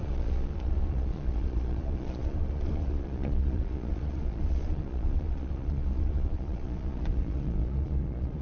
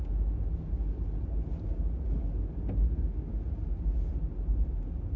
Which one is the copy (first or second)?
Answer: first